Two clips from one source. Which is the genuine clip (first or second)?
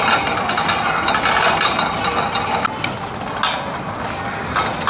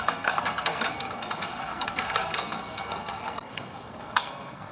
first